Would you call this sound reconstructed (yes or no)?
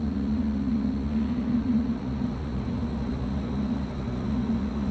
yes